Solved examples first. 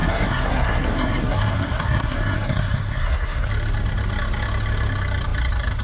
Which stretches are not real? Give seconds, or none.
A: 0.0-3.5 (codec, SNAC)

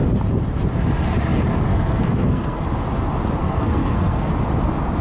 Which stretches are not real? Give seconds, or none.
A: 1.7-2.6 (codec, SNAC); 3.4-4.3

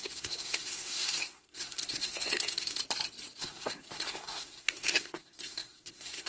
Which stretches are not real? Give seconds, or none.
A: 0.0-2.8 (codec, SNAC); 3.4-6.3